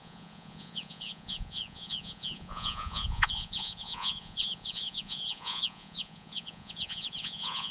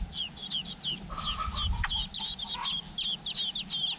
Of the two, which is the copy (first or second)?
first